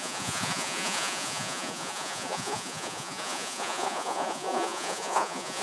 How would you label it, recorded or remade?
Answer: remade